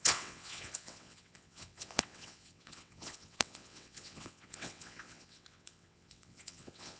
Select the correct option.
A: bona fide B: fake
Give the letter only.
B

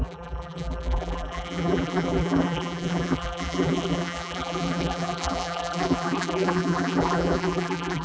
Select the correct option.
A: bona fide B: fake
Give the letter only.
B